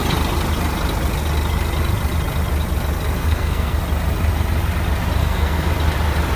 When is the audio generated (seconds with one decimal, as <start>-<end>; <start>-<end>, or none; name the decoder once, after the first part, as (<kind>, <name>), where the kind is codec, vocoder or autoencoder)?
3.2-3.8 (codec, SNAC); 5.2-5.7